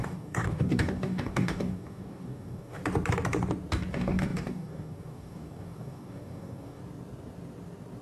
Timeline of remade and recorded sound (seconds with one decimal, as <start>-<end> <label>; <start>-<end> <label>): 0.0-2.8 remade; 2.8-3.9 recorded; 3.9-6.8 remade; 6.8-8.0 recorded